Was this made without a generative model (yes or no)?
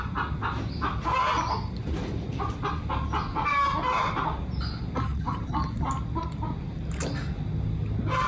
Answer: yes